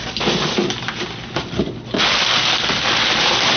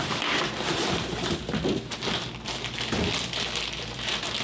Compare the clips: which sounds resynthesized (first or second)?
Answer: first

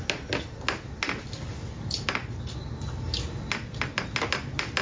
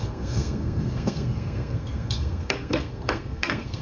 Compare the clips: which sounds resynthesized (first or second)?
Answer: second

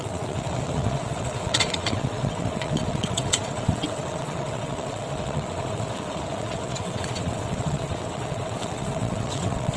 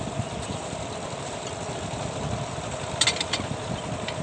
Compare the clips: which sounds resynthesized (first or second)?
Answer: first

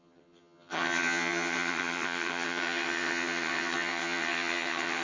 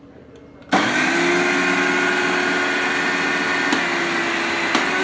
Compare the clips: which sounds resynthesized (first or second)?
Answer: first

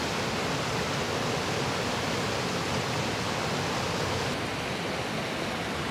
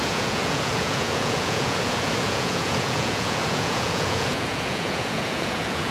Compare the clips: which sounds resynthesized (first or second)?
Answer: second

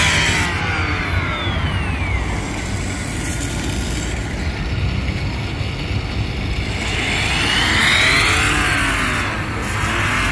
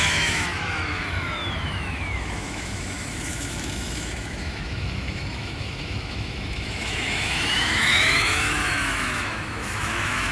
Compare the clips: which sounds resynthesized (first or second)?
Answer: second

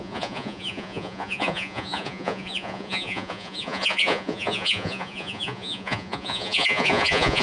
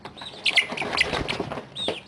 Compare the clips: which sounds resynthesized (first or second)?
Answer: first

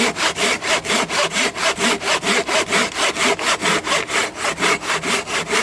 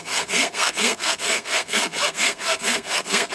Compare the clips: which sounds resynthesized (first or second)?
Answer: second